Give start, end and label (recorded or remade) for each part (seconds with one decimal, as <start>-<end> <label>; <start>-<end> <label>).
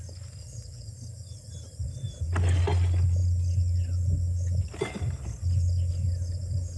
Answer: 0.0-0.4 recorded; 0.4-0.9 remade; 0.9-6.8 recorded